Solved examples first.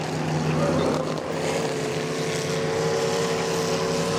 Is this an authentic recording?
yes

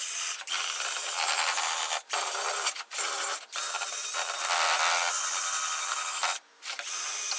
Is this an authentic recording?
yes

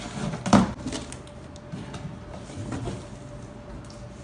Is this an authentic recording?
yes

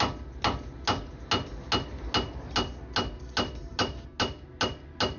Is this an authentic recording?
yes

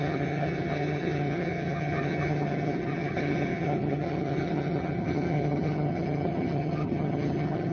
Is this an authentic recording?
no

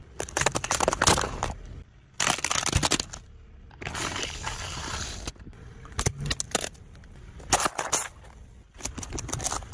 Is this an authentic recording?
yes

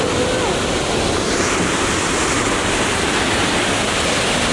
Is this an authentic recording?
yes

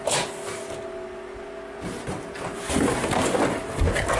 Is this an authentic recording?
yes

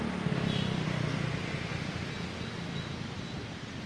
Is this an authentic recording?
yes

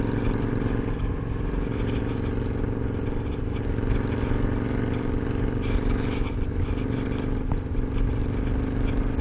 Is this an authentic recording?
yes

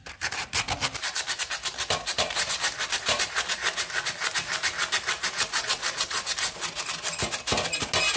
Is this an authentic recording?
yes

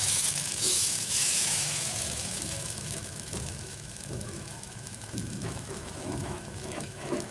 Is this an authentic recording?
no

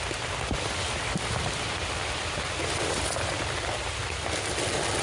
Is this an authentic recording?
yes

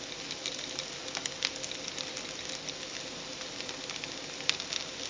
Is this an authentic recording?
yes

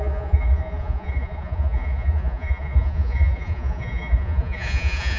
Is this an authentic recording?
no